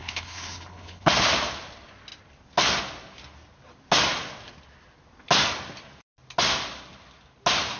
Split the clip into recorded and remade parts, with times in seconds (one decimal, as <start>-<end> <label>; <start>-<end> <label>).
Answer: 0.0-1.1 remade; 1.1-7.8 recorded